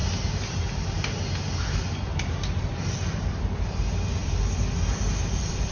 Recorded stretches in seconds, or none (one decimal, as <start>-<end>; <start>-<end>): 0.0-2.6; 4.2-5.3